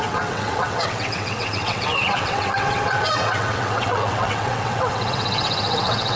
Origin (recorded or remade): remade